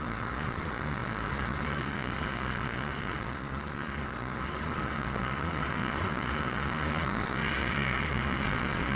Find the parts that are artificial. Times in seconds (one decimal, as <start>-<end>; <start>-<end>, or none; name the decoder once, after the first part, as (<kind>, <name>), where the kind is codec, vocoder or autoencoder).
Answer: 0.0-9.0 (vocoder, Vocos)